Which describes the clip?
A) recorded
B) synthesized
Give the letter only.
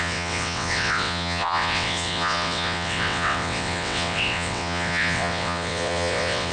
B